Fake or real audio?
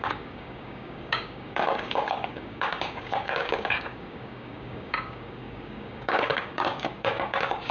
fake